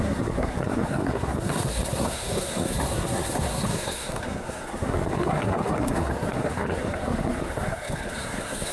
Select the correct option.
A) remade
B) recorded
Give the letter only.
A